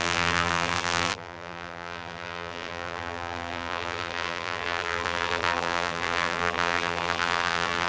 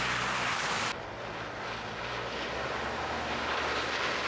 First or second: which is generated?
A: first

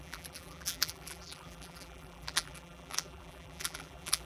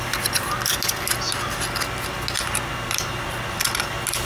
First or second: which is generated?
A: first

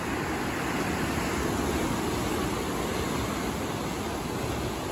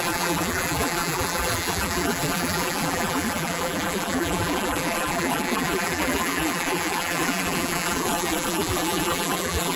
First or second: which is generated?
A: second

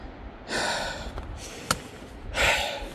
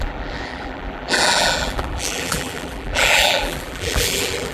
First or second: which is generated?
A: second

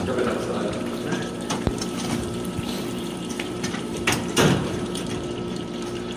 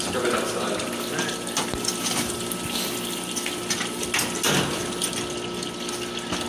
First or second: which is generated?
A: first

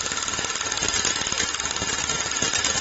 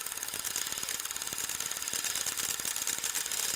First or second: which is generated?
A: first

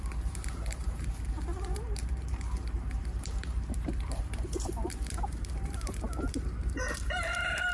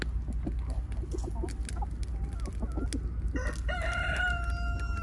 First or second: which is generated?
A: first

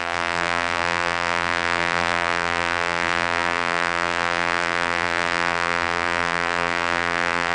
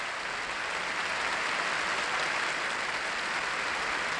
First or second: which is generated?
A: first